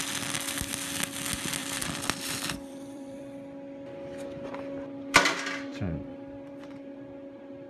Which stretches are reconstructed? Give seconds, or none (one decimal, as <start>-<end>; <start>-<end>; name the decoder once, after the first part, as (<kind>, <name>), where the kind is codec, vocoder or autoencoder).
1.6-3.2 (vocoder, BigVGAN v2); 5.7-6.7